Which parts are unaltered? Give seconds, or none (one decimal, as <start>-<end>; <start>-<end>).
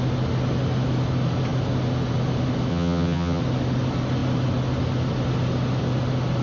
0.0-2.7; 3.4-6.4